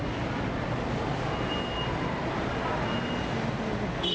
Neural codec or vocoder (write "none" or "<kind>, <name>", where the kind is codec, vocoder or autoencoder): none